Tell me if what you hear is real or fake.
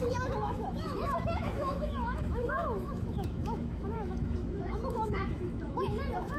fake